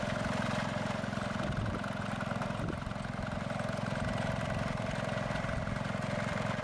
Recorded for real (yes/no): yes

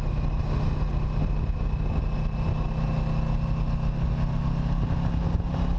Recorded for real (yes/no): yes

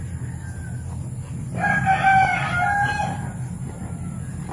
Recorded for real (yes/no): yes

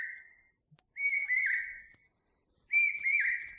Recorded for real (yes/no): yes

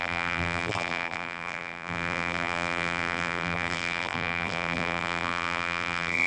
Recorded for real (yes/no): no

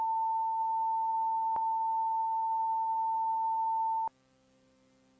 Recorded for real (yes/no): yes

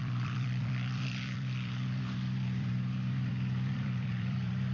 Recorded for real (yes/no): no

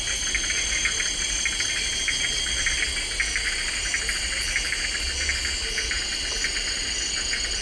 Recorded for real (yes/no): yes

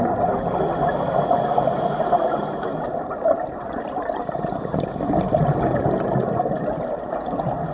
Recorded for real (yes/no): yes